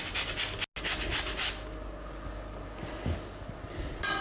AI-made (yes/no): no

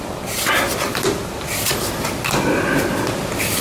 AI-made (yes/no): no